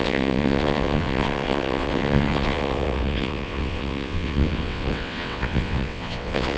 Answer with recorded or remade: remade